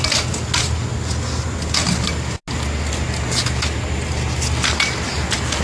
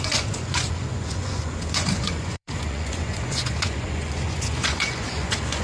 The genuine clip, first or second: first